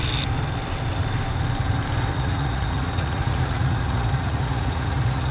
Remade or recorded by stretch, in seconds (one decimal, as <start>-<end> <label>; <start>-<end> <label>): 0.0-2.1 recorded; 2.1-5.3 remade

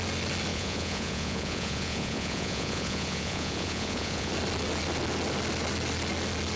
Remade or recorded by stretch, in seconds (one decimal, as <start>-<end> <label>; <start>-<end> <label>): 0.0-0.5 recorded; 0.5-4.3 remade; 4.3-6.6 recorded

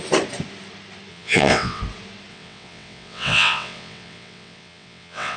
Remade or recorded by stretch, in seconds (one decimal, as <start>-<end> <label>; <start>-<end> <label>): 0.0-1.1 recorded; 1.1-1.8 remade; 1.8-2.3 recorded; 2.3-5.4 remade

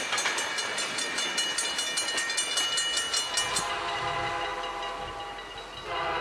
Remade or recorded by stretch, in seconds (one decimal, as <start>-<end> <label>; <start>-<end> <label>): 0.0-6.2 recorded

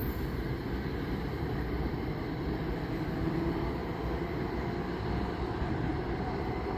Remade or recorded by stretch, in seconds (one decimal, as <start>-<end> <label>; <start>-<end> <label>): 0.0-1.1 recorded; 1.1-3.8 remade; 3.8-4.9 recorded; 4.9-6.8 remade